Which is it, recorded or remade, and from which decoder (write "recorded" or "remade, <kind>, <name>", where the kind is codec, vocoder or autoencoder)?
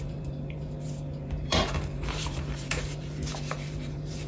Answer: remade, vocoder, BigVGAN v2